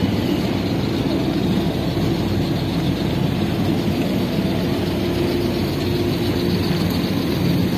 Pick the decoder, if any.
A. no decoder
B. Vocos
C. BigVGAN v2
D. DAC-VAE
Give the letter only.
A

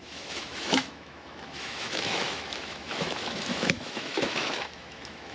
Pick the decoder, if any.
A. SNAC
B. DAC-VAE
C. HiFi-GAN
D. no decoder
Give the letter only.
B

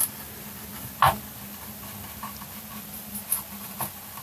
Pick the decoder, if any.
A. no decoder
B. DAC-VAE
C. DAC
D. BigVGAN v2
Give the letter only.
A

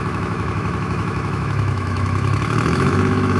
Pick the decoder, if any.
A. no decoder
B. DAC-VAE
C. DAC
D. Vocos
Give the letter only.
B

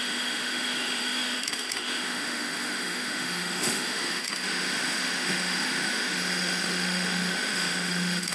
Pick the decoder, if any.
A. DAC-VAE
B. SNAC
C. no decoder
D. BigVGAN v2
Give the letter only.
A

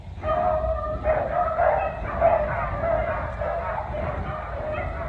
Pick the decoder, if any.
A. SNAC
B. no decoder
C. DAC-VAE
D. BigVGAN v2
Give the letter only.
B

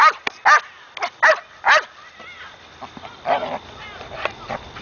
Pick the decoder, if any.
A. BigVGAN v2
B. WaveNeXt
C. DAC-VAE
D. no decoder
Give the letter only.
D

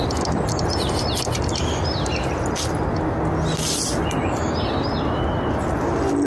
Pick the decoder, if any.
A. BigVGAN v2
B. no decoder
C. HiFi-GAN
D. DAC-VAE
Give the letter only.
B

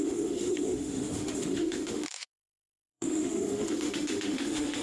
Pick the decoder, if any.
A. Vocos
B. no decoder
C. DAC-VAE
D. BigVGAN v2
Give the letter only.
C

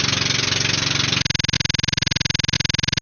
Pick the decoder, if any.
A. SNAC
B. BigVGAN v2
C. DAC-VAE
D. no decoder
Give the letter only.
D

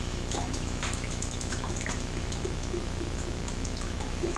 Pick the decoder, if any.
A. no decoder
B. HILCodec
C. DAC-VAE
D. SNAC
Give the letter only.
C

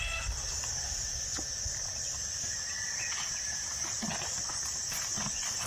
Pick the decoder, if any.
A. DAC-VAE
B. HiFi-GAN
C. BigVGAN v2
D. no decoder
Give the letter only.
D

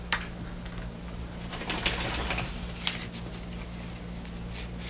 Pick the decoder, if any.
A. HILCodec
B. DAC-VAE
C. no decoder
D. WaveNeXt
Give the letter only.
C